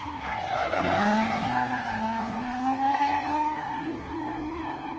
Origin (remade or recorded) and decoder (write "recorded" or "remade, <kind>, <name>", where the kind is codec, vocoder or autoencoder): remade, codec, SNAC